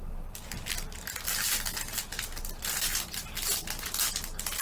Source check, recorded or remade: recorded